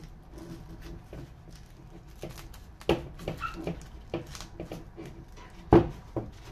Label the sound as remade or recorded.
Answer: recorded